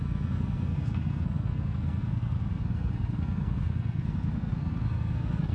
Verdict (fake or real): fake